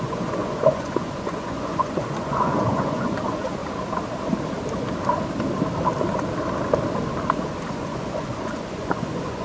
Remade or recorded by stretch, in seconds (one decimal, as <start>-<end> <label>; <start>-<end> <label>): 0.0-3.6 remade; 3.6-7.7 recorded; 7.7-9.4 remade